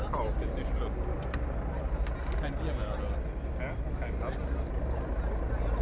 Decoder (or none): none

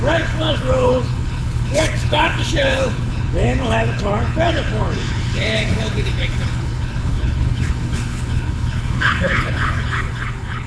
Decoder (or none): codec, HILCodec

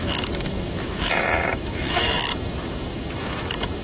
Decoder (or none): autoencoder, DAC-VAE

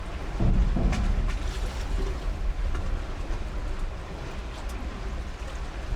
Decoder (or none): none